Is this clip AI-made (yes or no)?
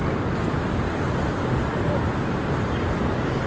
no